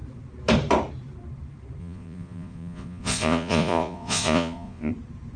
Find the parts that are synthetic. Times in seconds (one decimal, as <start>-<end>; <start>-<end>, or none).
1.8-4.9